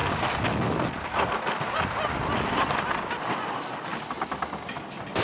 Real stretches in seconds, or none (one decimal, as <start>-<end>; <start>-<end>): 0.0-5.2